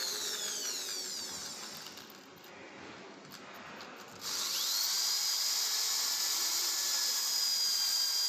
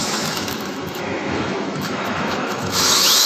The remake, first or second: second